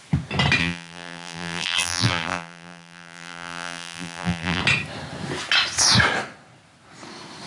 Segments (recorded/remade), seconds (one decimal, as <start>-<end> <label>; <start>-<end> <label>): 0.0-0.6 recorded; 0.6-4.6 remade; 4.6-7.5 recorded

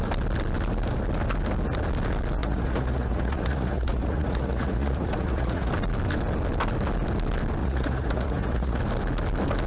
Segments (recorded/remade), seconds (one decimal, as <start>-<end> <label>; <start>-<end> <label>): 0.0-2.4 recorded; 2.4-5.7 remade; 5.7-7.6 recorded; 7.6-8.8 remade; 8.8-9.7 recorded